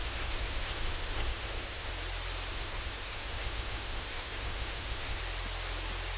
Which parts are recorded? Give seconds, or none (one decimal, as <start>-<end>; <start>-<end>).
1.9-2.5; 5.2-6.2